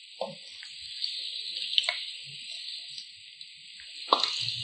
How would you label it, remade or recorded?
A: recorded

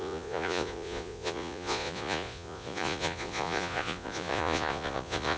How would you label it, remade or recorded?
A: remade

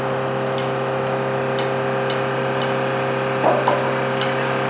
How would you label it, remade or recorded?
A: recorded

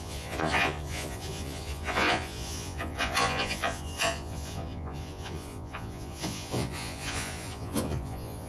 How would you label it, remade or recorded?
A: remade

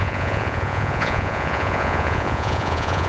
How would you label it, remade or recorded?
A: remade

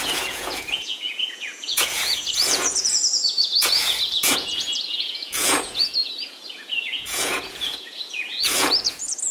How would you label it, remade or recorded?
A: remade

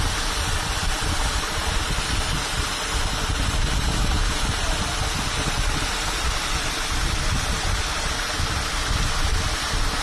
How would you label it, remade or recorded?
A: recorded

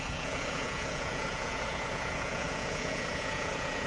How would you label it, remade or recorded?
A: remade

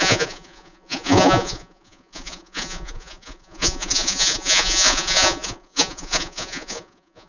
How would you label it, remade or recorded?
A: remade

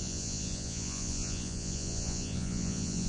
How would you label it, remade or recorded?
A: remade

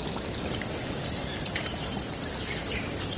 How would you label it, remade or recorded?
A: recorded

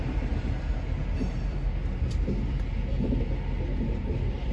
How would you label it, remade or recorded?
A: recorded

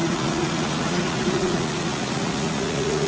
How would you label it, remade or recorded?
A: remade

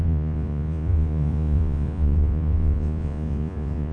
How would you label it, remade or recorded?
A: remade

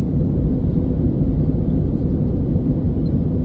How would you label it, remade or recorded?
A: recorded